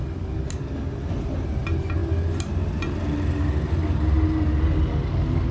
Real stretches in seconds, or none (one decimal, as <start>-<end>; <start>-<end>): 0.0-5.5